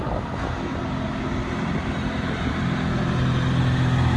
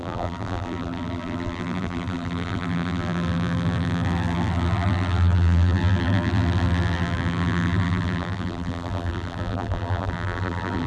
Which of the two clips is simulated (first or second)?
second